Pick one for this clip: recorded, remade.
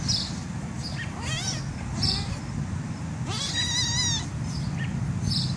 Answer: recorded